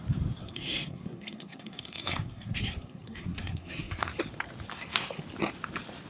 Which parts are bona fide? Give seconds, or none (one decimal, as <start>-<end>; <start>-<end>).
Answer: 0.0-0.4; 4.1-4.7; 5.2-6.1